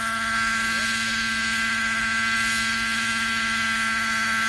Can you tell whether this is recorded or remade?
recorded